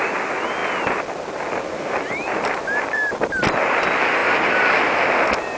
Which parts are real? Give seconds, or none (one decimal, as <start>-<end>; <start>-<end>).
0.0-0.6; 3.8-4.2